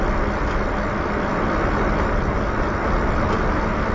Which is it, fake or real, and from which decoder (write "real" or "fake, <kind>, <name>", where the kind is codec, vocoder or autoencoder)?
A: real